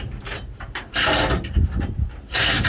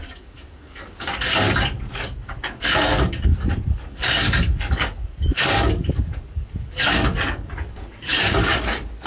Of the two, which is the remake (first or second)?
second